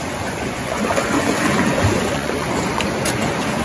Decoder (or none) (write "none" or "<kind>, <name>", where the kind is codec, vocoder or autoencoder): vocoder, Vocos